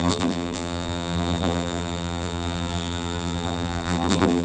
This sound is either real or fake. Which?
fake